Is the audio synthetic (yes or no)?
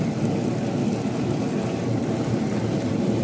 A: yes